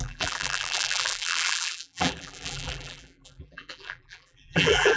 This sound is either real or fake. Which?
fake